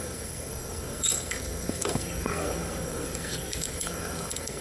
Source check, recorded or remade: remade